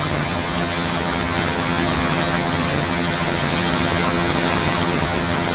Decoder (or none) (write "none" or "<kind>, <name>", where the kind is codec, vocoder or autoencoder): vocoder, HiFi-GAN